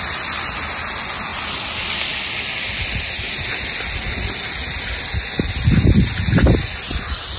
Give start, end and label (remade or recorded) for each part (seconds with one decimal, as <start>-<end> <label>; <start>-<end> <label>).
0.0-7.4 recorded

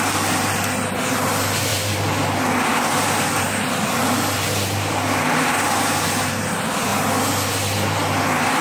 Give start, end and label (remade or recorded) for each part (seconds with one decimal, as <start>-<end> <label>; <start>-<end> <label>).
0.0-6.9 remade; 6.9-8.6 recorded

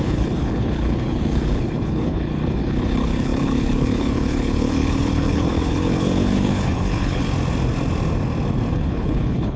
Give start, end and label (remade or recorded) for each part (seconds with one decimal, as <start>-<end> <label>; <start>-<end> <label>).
0.0-7.2 remade; 7.2-8.7 recorded; 8.7-9.6 remade

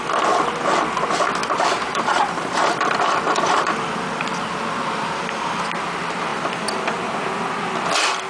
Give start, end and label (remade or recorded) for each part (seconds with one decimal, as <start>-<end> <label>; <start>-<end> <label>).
0.0-1.4 recorded; 1.4-5.5 remade; 5.5-8.3 recorded